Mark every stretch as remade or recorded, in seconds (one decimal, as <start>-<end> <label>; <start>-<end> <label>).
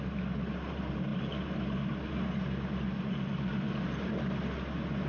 0.0-5.1 recorded